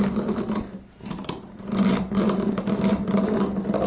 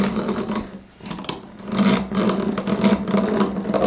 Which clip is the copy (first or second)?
first